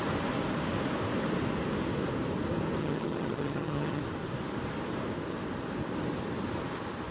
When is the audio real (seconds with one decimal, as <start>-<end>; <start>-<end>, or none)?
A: 0.0-2.8; 4.0-7.1